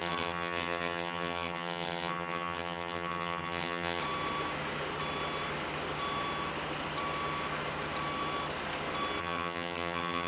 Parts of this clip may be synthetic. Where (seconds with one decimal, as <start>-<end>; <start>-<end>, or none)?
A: 0.0-4.0; 9.2-10.3